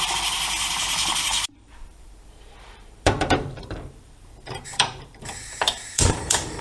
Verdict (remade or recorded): remade